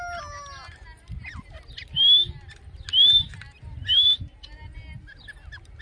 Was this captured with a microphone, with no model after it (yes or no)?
yes